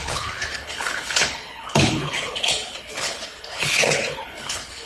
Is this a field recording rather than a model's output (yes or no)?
no